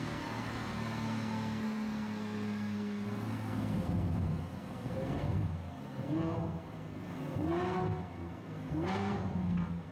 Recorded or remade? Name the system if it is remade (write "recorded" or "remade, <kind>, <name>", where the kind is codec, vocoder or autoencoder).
remade, codec, SNAC